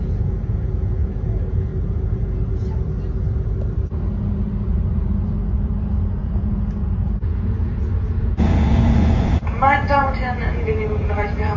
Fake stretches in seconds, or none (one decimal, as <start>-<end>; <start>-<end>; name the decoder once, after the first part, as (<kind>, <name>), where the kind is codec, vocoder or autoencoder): 0.0-1.7 (vocoder, Vocos); 5.7-11.6